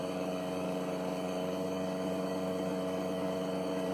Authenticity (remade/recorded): remade